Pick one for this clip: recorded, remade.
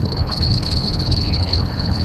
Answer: remade